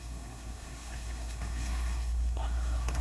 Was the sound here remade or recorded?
remade